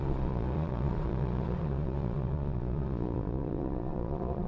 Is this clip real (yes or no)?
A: no